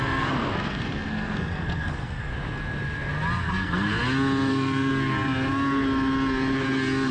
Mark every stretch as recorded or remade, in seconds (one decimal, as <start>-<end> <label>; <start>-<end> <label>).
0.0-2.3 remade; 2.3-3.5 recorded; 3.5-3.9 remade; 3.9-4.5 recorded; 4.5-4.9 remade; 4.9-7.1 recorded